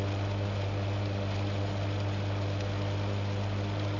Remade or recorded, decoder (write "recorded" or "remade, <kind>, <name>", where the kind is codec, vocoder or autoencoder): recorded